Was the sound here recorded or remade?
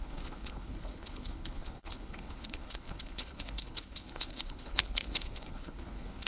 remade